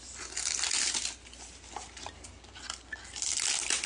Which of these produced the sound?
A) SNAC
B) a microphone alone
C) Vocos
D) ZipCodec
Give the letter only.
B